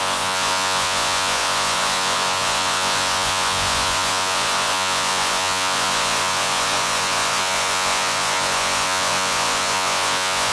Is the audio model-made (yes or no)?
yes